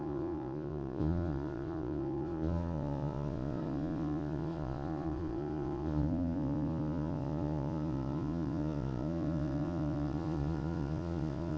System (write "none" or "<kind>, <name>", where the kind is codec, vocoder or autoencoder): vocoder, Vocos